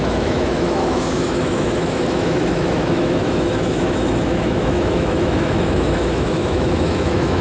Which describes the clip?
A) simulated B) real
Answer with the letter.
A